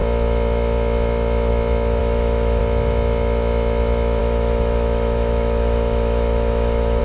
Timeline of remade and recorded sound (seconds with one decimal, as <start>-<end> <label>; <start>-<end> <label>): 0.0-2.0 recorded; 2.0-2.6 remade; 2.6-4.2 recorded; 4.2-7.0 remade